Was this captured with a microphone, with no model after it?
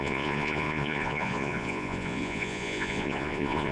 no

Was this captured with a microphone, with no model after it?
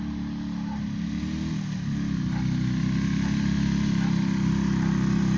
yes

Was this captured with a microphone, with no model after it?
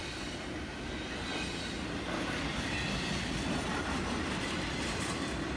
yes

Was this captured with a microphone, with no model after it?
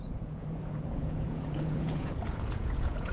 no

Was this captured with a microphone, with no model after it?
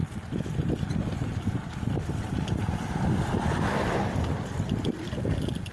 yes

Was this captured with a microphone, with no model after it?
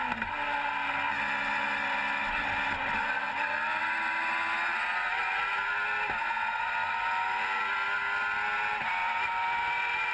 yes